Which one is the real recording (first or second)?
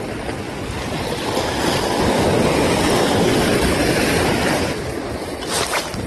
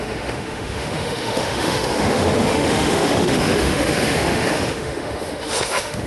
first